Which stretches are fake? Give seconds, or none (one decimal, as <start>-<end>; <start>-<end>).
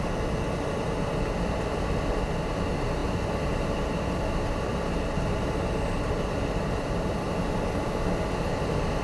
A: none